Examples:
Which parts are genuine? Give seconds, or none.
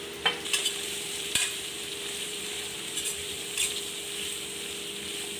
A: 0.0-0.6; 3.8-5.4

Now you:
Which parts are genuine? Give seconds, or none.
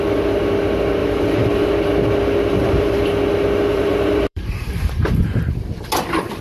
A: 0.0-1.0; 1.7-2.5; 3.0-3.7; 5.4-6.4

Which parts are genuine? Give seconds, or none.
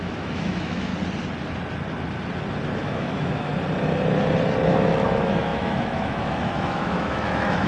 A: 0.9-2.8; 3.5-4.7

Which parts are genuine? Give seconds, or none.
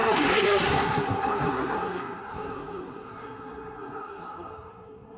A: none